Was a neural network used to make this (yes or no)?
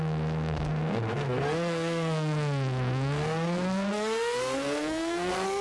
yes